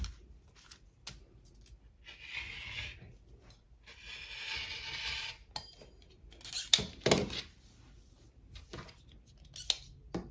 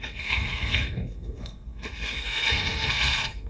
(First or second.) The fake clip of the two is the second